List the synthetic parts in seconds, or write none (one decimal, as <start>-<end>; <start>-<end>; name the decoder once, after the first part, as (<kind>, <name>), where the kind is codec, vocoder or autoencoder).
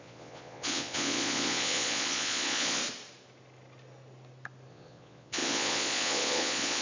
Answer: 0.0-2.8 (vocoder, Vocos); 4.7-6.8